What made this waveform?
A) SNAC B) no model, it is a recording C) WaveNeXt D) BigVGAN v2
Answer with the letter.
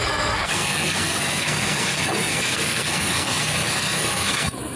A